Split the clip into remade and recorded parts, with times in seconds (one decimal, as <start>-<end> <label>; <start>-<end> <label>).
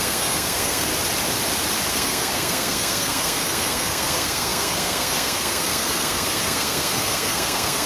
0.0-0.9 remade; 0.9-1.9 recorded; 1.9-7.9 remade